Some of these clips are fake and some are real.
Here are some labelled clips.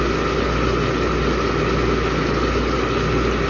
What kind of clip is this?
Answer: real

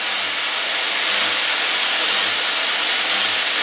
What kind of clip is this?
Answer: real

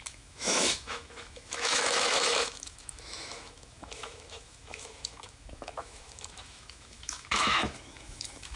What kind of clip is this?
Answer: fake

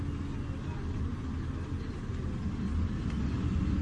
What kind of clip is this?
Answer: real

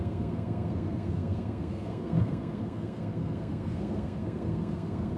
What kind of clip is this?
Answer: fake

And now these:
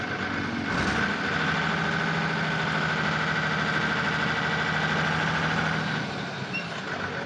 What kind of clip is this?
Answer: real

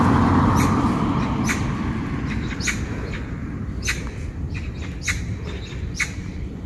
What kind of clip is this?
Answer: real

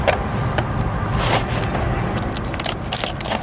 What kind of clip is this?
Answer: fake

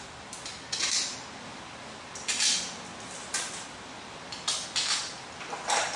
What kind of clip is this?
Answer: real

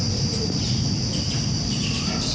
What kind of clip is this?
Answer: fake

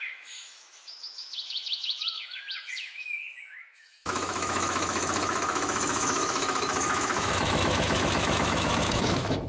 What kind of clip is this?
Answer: fake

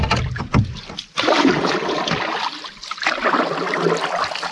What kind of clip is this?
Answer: real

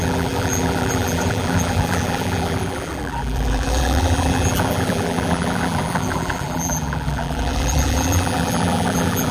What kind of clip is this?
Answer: fake